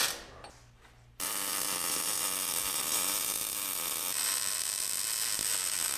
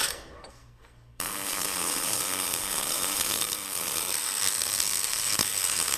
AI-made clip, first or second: second